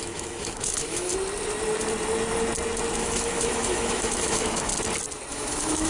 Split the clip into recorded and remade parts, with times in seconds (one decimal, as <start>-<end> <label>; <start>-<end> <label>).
0.0-1.1 remade; 1.1-3.0 recorded; 3.0-4.7 remade; 4.7-5.3 recorded; 5.3-5.9 remade

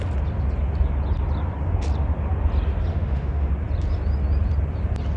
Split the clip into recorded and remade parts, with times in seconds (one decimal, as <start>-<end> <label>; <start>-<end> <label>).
0.0-2.9 recorded; 2.9-3.5 remade; 3.5-5.2 recorded

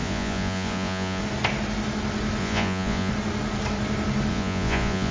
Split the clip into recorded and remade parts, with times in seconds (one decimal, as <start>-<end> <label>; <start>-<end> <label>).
0.0-1.2 remade; 1.2-2.4 recorded; 2.4-3.1 remade; 3.1-4.3 recorded; 4.3-5.1 remade

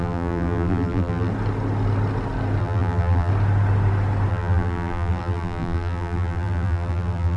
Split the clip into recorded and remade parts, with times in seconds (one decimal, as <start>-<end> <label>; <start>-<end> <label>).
0.0-1.3 remade; 1.3-2.6 recorded; 2.6-3.3 remade; 3.3-4.3 recorded; 4.3-7.4 remade

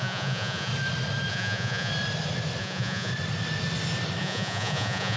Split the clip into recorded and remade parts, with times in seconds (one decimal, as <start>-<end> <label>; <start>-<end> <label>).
0.0-0.7 remade; 0.7-1.3 recorded; 1.3-1.9 remade; 1.9-2.6 recorded; 2.6-3.1 remade; 3.1-4.2 recorded; 4.2-5.2 remade

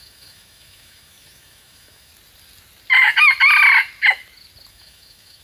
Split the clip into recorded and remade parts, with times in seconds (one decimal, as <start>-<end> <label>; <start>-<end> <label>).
0.0-2.1 remade; 2.1-4.7 recorded; 4.7-5.4 remade